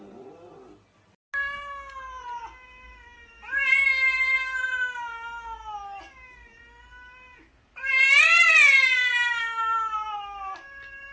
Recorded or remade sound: recorded